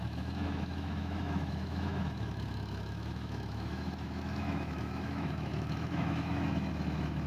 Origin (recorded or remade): remade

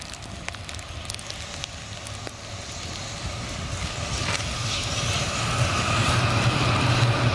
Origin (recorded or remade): recorded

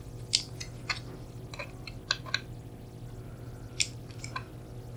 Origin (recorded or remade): recorded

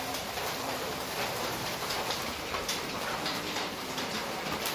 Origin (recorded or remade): remade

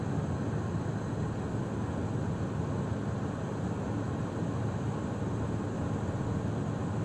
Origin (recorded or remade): recorded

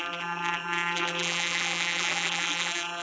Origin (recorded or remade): remade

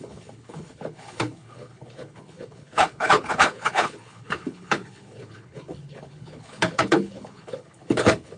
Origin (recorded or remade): remade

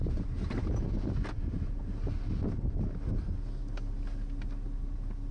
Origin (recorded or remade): recorded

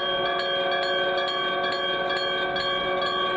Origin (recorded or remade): recorded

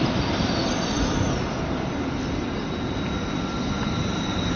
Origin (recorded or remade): recorded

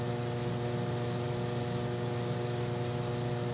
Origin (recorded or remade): recorded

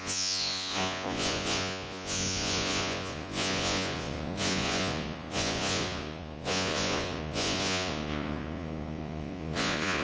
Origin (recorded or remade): remade